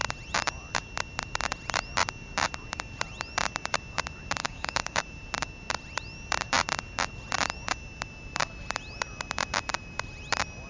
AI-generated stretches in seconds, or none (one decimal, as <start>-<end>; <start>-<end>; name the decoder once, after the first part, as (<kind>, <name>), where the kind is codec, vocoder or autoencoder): 4.4-5.0 (codec, DAC)